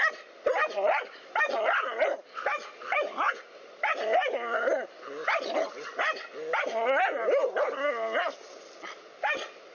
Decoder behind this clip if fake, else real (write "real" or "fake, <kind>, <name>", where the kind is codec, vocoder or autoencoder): real